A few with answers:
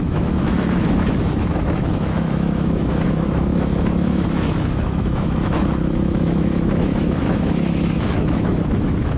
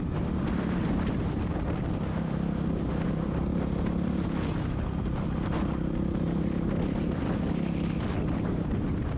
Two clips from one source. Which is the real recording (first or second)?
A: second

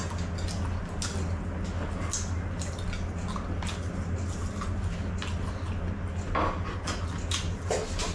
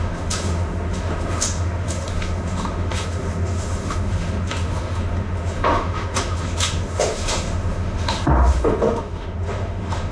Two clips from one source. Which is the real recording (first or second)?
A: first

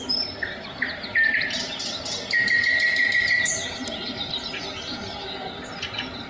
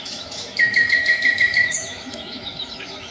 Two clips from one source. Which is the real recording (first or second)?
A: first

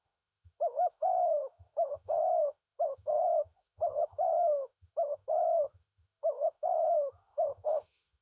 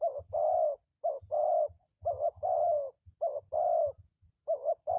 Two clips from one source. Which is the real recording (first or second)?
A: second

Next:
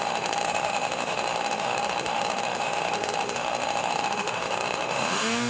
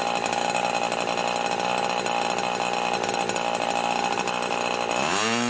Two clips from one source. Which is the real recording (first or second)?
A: second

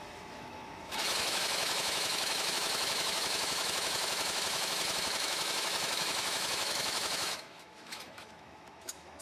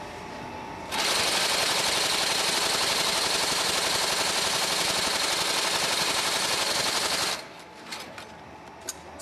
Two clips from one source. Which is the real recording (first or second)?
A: second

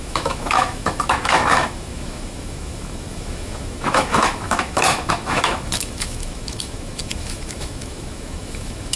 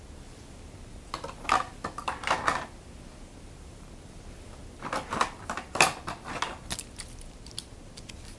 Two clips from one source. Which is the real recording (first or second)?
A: second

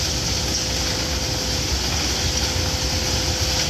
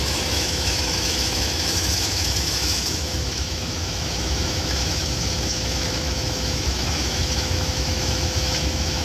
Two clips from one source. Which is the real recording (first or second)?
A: first